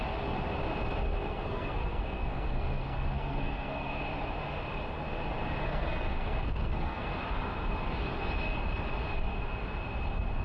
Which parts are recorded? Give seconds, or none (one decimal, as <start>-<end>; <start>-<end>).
0.0-1.1; 4.0-5.6; 7.1-10.4